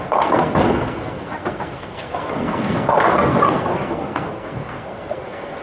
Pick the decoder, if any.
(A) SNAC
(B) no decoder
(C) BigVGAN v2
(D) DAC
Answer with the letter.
A